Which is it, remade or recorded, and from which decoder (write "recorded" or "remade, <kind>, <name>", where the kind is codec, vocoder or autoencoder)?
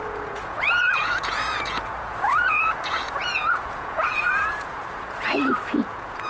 remade, vocoder, Vocos